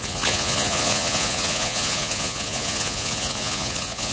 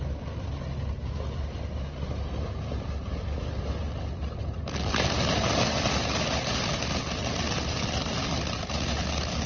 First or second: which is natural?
second